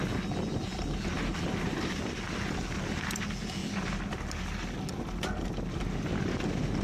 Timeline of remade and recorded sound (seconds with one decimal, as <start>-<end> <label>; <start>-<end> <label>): 0.0-6.8 recorded